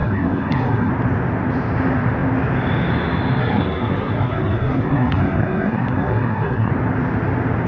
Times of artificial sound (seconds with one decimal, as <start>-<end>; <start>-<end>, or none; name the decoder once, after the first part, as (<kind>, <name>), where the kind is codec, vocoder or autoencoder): 0.0-0.9 (codec, SNAC); 3.4-6.7